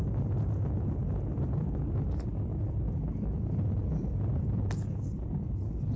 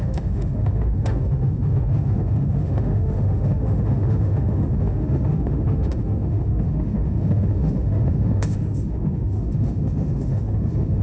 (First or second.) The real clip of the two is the first